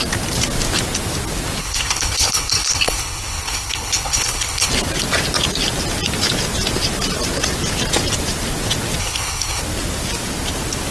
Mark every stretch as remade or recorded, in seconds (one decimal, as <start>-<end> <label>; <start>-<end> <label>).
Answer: 0.0-1.6 recorded; 1.6-4.7 remade; 4.7-9.0 recorded; 9.0-9.6 remade; 9.6-10.9 recorded